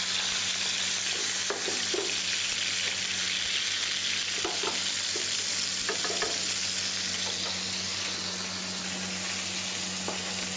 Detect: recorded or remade recorded